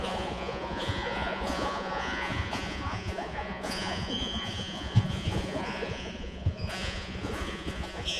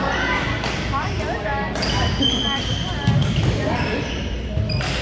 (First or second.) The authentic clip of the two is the second